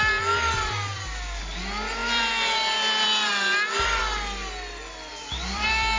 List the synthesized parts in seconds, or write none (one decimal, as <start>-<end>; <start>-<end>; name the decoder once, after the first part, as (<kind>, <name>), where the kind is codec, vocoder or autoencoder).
0.9-1.4 (vocoder, BigVGAN v2); 2.0-4.0; 5.1-6.0